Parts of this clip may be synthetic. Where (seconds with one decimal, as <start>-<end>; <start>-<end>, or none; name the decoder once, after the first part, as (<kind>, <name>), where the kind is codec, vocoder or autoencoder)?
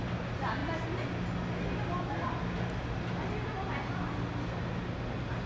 none